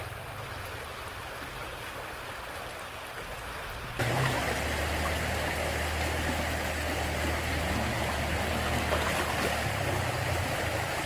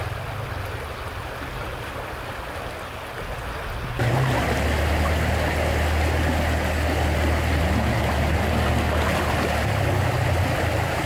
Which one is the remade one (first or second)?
first